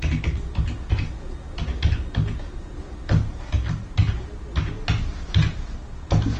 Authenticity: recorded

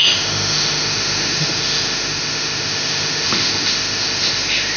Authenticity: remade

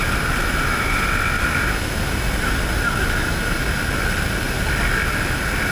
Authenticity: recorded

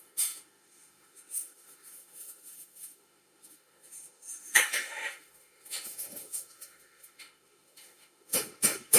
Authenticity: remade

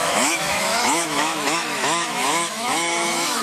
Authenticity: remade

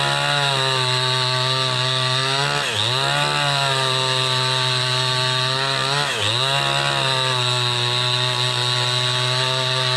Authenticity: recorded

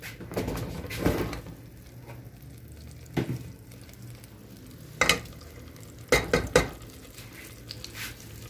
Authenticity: recorded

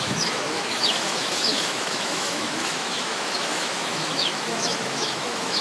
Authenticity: remade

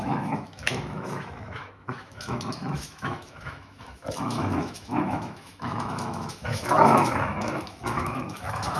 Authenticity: remade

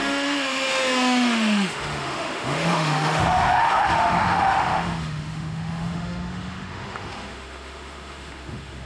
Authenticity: remade